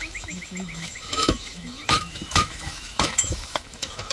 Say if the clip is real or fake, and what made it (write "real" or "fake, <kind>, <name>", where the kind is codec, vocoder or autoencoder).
fake, autoencoder, DAC-VAE